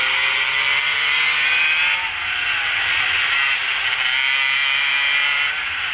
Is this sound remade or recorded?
recorded